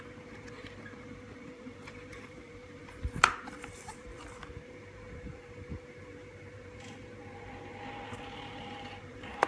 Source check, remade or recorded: remade